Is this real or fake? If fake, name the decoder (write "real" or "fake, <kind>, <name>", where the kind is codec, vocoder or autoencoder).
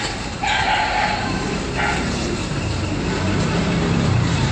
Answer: fake, vocoder, BigVGAN v2